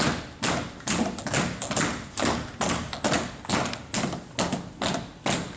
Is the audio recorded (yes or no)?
yes